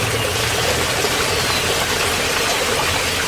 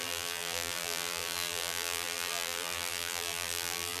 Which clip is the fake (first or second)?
second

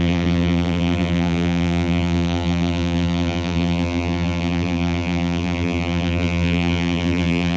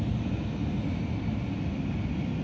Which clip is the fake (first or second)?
first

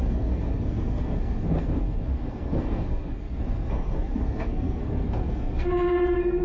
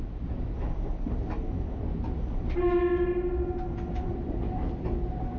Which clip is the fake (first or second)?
first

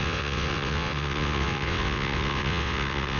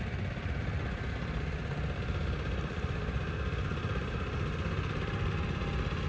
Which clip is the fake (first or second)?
first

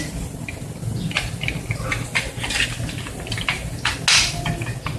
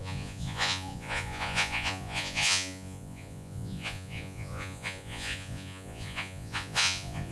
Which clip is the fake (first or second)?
second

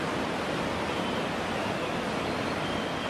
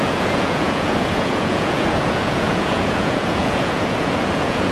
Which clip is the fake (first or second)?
second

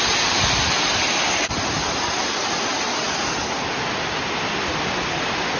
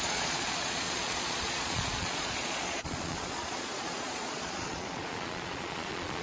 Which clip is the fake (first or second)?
second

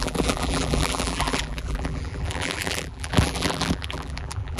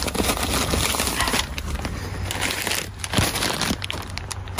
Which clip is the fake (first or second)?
first